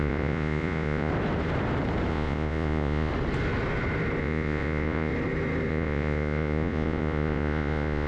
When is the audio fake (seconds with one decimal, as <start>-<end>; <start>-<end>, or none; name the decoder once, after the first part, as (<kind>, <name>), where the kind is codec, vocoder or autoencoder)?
0.0-1.1 (vocoder, Vocos); 2.1-3.1; 4.2-5.1; 5.7-8.1